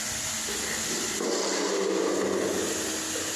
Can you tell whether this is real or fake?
real